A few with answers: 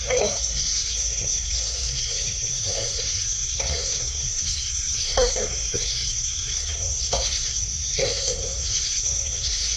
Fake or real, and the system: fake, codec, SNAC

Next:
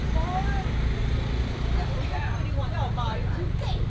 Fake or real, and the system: real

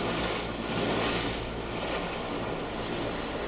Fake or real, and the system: real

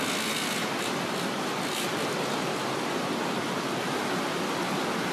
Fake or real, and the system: real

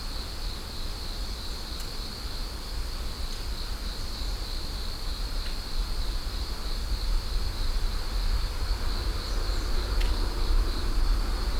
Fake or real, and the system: real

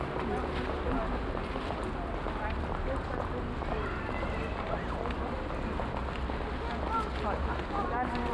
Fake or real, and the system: real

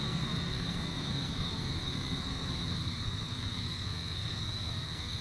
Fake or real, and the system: fake, codec, SNAC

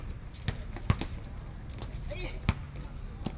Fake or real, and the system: real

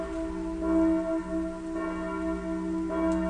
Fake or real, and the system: real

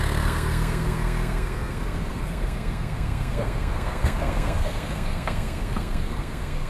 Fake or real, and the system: fake, codec, SNAC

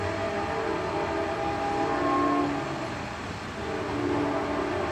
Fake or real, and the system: real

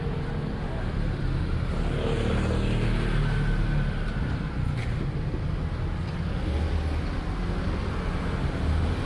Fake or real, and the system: real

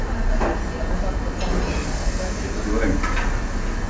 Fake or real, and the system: real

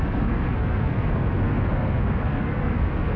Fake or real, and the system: fake, codec, SNAC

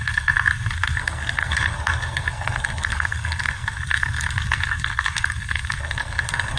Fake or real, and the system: fake, codec, SNAC